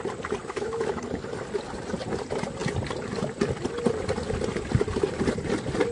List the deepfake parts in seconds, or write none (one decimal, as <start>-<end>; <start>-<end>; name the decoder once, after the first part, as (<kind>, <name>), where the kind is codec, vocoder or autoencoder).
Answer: 0.4-1.0 (autoencoder, DAC-VAE)